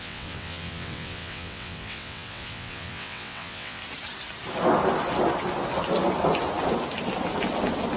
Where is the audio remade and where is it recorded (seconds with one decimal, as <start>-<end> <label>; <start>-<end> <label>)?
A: 0.0-3.8 remade; 3.8-8.0 recorded